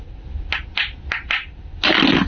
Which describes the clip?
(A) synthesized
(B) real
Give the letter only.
B